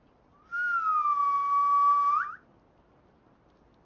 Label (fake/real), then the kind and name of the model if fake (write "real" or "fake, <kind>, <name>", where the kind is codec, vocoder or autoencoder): real